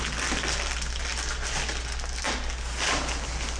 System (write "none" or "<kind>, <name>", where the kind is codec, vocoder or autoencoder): none